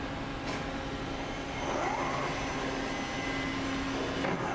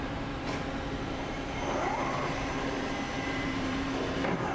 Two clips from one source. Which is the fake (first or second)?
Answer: second